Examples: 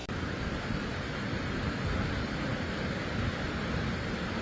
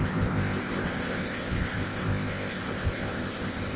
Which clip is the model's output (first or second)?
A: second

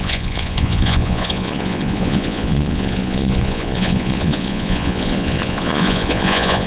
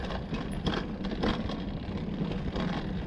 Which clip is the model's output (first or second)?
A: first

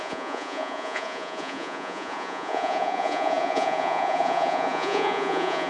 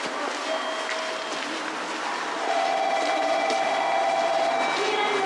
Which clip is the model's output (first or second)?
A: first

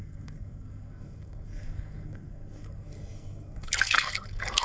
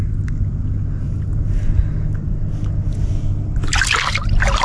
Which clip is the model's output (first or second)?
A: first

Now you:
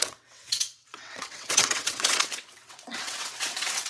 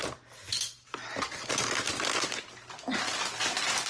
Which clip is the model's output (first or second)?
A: first